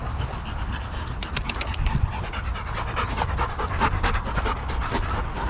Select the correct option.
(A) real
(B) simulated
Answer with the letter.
A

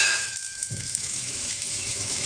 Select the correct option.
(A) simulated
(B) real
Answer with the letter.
A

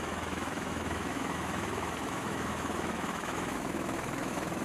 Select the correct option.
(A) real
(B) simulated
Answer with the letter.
B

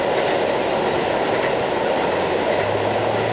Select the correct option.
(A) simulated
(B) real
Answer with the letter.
B